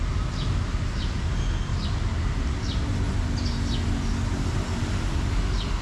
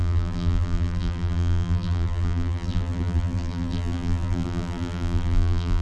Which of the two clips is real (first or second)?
first